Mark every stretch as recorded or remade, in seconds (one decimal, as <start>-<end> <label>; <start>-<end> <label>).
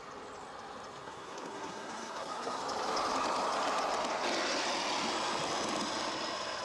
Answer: 0.0-1.0 recorded; 1.0-2.6 remade; 2.6-6.6 recorded